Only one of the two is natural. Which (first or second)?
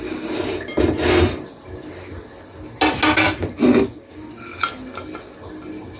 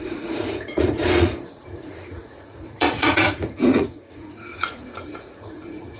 first